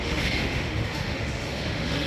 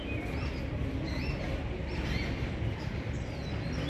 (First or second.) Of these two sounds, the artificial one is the first